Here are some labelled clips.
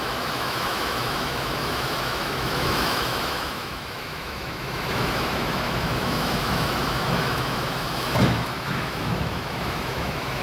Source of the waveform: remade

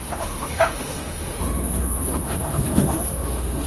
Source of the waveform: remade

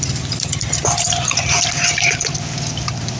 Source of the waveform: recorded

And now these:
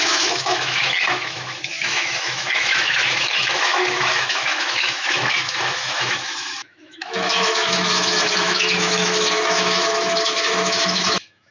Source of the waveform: remade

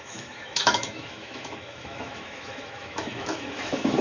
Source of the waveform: remade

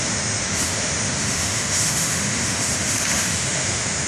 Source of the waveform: remade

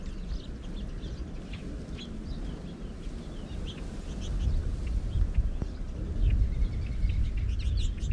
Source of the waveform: recorded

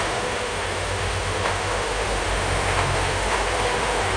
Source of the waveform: remade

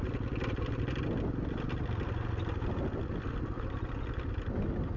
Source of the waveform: recorded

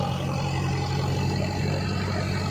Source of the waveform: recorded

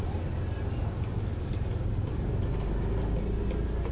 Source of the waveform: recorded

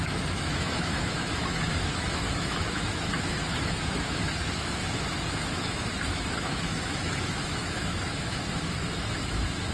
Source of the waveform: remade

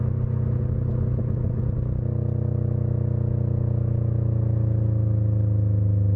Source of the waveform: recorded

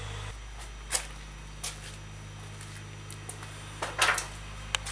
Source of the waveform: recorded